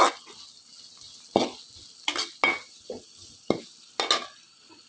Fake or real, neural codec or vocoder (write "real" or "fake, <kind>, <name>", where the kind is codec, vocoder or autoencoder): real